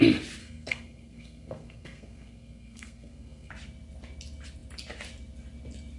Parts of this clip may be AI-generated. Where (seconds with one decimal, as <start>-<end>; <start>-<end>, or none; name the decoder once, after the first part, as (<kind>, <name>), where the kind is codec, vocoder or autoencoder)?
0.4-3.5 (codec, SNAC)